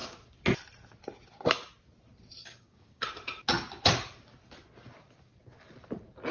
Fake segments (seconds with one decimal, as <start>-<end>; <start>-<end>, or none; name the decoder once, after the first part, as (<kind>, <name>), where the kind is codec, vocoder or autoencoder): 2.4-3.0 (codec, DAC)